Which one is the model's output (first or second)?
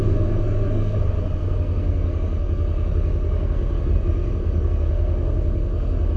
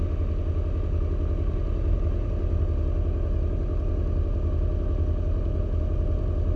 first